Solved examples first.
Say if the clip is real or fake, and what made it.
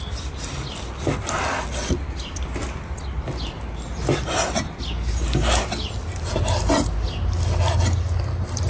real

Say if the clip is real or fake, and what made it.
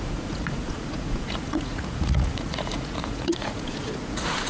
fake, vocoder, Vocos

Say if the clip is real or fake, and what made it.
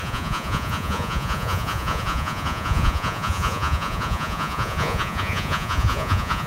fake, vocoder, Vocos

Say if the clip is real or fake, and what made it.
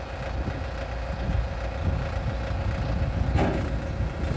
real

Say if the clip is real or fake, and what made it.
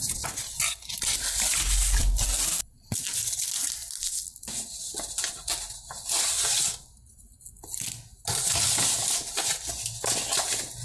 real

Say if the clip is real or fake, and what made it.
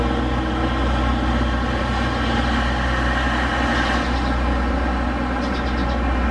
real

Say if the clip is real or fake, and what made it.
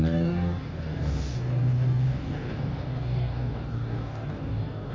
fake, codec, DAC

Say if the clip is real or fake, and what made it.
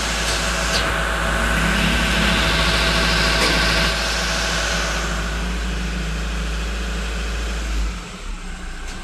real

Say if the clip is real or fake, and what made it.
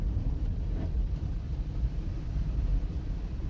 fake, vocoder, BigVGAN v2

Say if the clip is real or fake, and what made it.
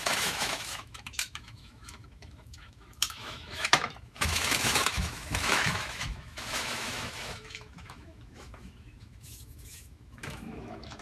fake, autoencoder, DAC-VAE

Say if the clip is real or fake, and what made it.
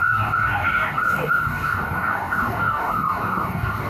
fake, codec, DAC